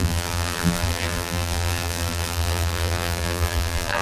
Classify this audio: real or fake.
fake